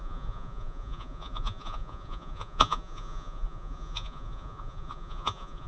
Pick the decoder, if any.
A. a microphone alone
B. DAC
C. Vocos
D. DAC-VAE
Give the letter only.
C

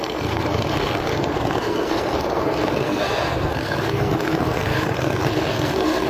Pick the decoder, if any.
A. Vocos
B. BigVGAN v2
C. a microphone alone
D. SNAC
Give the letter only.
D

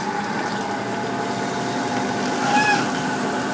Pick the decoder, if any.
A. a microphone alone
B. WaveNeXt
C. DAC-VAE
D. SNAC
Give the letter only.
A